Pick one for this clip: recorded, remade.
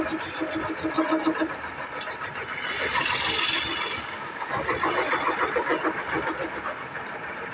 recorded